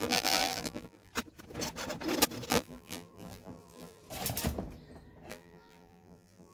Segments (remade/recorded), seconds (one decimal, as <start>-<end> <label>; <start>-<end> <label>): 0.0-1.1 remade; 1.1-2.5 recorded; 2.5-4.0 remade; 4.0-5.3 recorded; 5.3-6.5 remade